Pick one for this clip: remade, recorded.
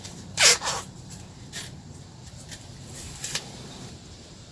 remade